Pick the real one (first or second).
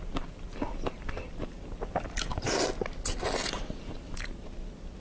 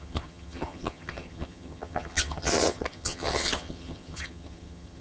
first